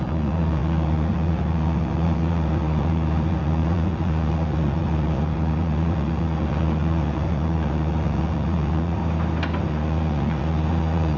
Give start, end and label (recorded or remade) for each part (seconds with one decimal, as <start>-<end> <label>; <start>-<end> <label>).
0.0-9.0 remade; 9.0-9.6 recorded; 9.6-11.2 remade